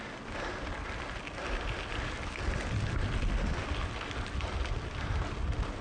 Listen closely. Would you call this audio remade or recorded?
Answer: recorded